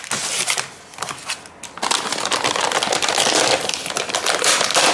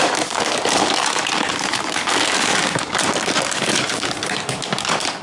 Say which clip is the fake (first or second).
second